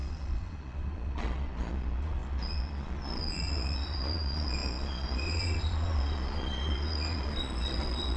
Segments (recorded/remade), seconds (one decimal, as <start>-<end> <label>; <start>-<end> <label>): 0.0-8.2 remade